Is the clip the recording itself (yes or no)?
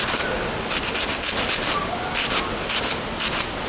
yes